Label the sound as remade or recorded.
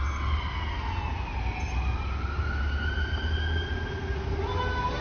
recorded